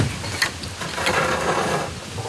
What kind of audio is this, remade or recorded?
recorded